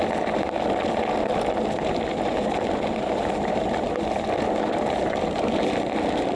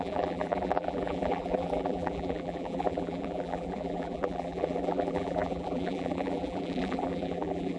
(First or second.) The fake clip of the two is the second